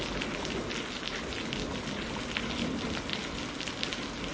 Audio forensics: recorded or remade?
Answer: recorded